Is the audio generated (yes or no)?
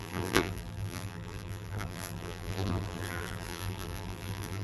yes